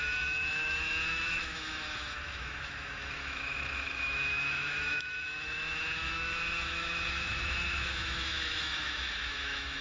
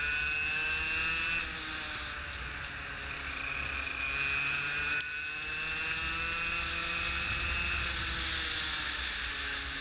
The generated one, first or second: first